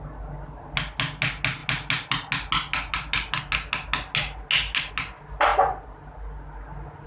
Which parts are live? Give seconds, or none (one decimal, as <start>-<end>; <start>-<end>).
0.0-7.1